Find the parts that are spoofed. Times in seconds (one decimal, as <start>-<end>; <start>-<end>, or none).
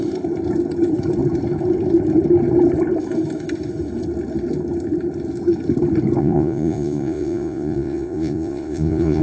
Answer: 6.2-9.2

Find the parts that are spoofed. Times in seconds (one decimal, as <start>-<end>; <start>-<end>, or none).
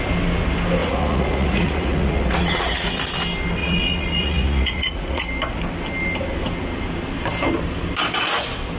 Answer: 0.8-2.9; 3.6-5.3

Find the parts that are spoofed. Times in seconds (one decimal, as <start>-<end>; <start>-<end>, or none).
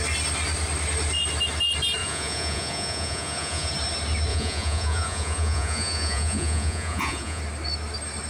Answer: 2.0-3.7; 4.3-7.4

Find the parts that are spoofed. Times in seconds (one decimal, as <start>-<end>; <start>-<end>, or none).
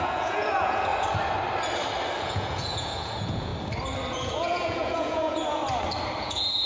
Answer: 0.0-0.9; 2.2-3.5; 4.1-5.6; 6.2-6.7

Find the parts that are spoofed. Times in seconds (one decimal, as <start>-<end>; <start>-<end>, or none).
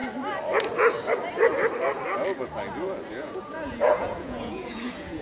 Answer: 3.1-5.2